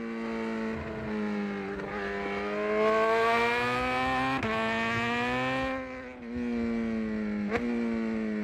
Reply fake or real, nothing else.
real